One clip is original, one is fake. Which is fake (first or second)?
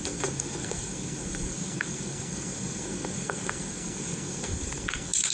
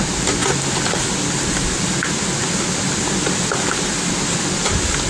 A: first